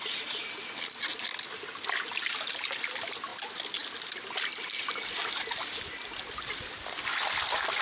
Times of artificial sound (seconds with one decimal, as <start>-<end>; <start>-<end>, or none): none